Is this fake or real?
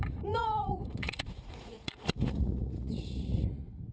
fake